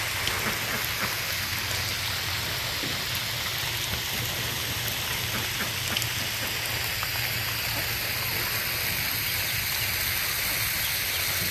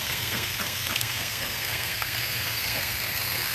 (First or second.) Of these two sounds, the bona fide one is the first